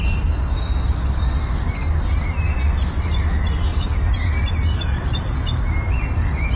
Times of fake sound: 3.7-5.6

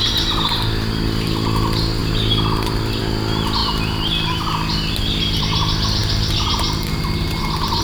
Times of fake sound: none

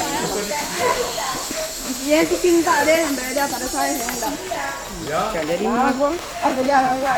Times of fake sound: 0.5-2.8; 6.1-7.2

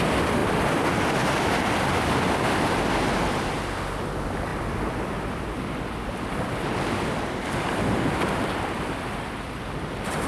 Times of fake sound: none